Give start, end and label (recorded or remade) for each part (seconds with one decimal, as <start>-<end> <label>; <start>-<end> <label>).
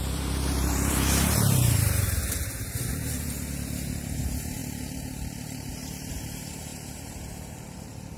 0.0-8.2 remade